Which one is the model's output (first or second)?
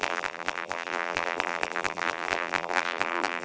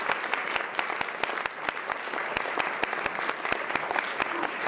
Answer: first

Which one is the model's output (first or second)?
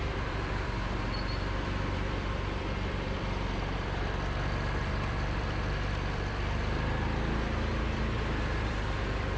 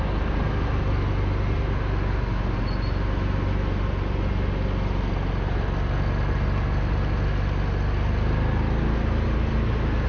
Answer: first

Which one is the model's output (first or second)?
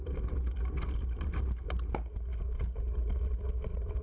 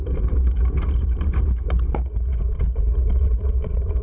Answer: second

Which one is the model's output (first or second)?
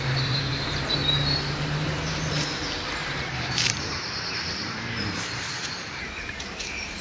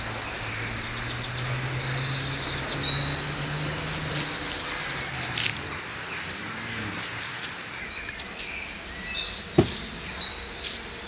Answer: first